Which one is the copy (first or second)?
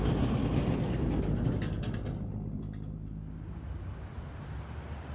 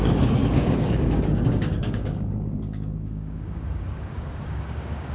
second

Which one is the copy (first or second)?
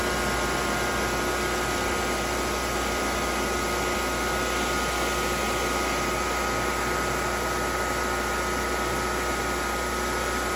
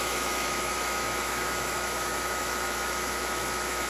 second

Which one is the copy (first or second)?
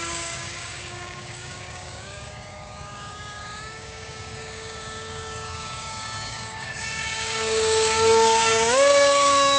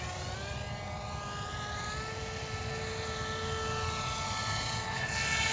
first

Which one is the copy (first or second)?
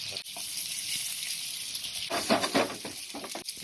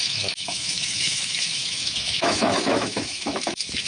second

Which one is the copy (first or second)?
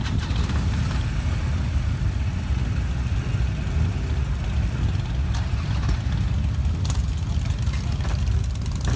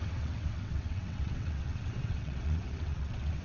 second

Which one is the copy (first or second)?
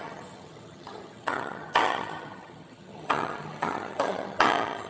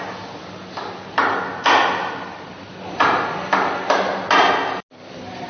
first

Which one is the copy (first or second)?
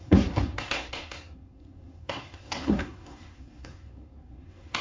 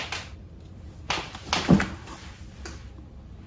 first